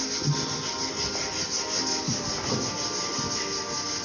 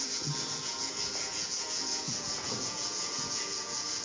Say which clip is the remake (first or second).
second